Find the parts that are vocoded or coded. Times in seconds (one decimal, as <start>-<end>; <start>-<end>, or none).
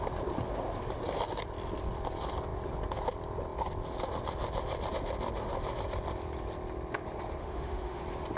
7.4-8.0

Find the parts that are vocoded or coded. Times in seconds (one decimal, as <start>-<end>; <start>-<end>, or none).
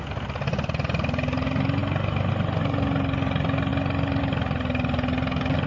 none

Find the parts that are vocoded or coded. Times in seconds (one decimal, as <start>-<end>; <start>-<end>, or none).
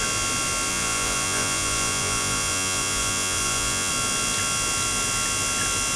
0.7-3.9